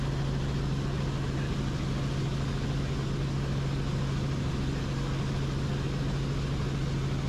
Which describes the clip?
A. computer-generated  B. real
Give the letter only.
B